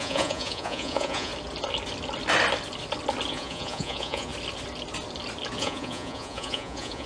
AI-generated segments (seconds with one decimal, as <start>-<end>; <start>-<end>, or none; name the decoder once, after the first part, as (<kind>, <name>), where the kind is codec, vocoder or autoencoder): 0.0-1.3 (vocoder, Vocos); 3.3-4.3; 5.6-7.1